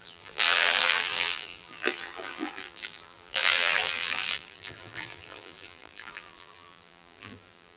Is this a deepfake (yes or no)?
yes